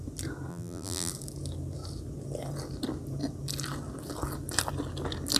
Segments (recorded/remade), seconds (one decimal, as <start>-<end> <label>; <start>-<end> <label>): 0.0-0.5 recorded; 0.5-1.1 remade; 1.1-5.4 recorded